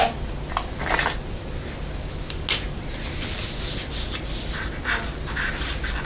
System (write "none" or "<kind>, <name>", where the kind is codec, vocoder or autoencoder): none